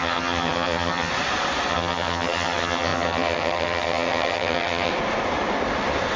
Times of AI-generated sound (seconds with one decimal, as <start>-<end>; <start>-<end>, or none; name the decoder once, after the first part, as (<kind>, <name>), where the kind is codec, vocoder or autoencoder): 0.0-1.1 (vocoder, HiFi-GAN); 1.7-4.9